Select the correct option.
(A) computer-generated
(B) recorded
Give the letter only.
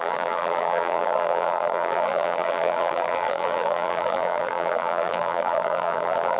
A